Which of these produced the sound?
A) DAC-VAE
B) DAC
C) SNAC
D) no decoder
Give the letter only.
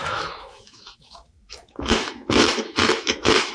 A